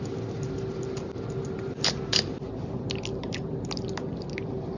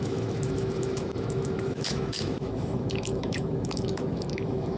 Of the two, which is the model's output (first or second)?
second